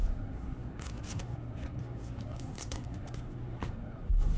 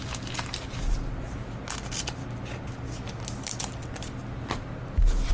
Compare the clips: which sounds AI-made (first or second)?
first